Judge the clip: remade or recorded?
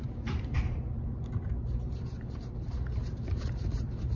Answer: remade